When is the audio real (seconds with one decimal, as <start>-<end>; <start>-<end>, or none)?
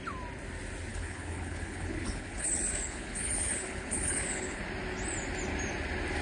0.0-0.9; 4.6-6.2